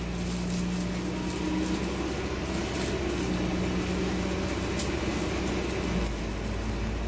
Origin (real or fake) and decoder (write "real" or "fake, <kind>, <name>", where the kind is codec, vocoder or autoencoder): real